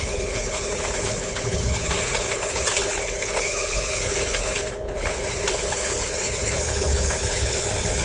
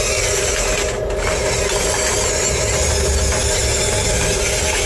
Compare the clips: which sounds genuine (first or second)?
second